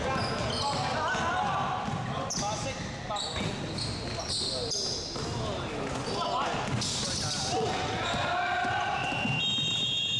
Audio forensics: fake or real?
real